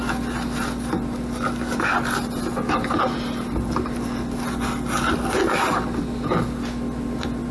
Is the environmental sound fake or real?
real